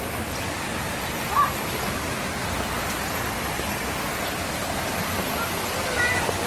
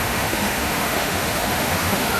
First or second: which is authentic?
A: first